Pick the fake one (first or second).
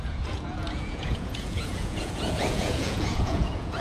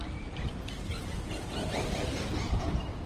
first